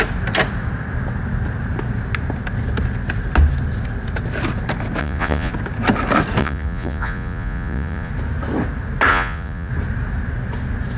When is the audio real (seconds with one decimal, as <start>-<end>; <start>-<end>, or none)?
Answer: 0.0-5.0; 5.5-6.4; 8.1-9.1; 9.7-11.0